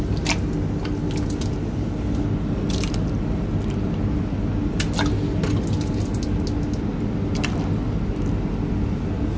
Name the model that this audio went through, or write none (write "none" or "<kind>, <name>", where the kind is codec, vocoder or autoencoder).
none